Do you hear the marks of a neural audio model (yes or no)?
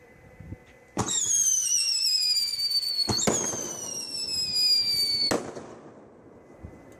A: no